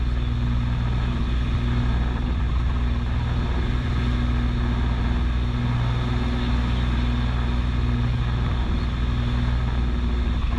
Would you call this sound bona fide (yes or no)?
yes